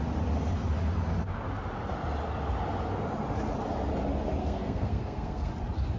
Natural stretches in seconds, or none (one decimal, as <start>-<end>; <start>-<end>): 0.0-4.4; 5.5-6.0